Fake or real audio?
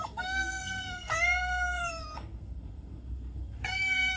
fake